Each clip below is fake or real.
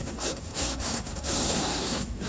fake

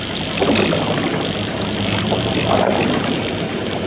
real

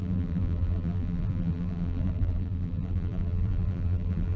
fake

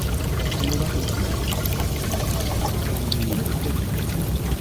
real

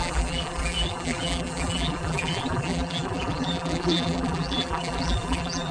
fake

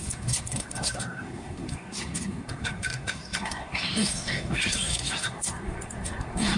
fake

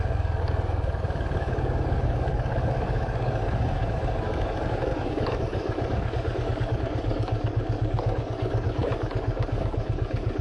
fake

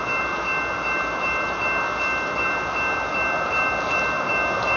real